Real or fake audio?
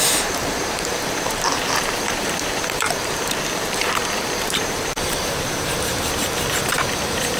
fake